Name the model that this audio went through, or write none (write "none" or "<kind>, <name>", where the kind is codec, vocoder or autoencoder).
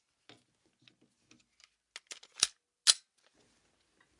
none